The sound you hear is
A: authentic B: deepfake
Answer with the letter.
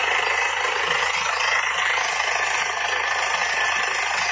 A